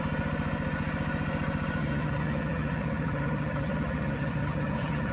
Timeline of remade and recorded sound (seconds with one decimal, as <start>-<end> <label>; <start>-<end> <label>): 0.0-1.8 recorded; 1.8-5.1 remade